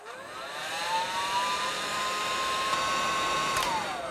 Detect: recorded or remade remade